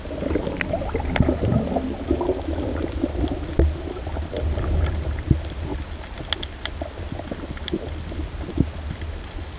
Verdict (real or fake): real